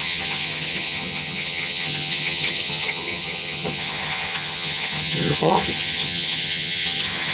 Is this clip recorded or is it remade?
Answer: remade